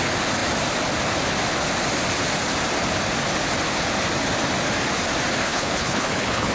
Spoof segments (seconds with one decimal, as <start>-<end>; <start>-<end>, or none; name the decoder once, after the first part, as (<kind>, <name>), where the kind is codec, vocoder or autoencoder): 5.4-6.5 (codec, HILCodec)